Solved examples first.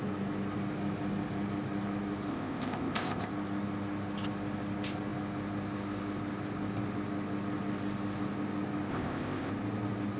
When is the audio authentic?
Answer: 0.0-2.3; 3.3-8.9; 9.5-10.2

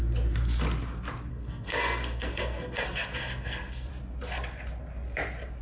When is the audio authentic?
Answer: 0.0-1.3; 3.9-5.6

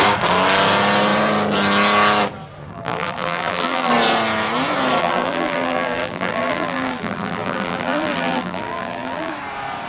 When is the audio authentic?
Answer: 0.0-2.7; 3.9-5.0; 9.3-9.9

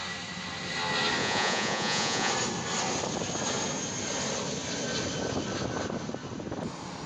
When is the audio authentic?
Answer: 0.0-1.2; 2.3-7.1

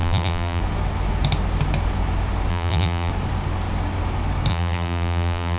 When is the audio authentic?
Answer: 0.6-2.5; 3.1-4.5

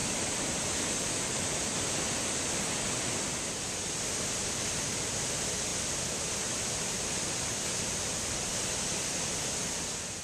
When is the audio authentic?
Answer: 0.0-10.2